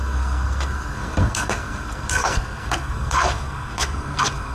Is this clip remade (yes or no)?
yes